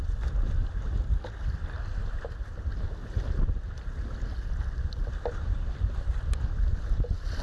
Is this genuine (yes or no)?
yes